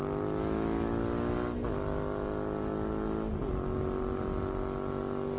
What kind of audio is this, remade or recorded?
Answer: recorded